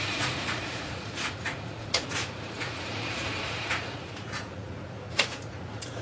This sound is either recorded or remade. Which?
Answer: remade